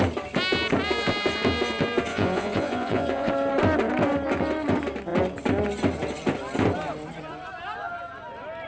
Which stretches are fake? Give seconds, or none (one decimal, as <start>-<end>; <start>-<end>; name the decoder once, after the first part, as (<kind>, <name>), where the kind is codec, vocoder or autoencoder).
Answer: 2.1-3.3 (vocoder, Vocos)